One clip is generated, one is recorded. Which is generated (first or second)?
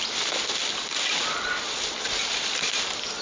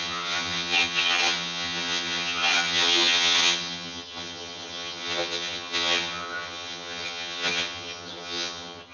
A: second